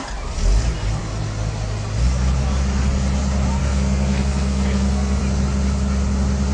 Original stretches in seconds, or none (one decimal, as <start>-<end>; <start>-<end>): 0.0-3.6; 5.2-6.5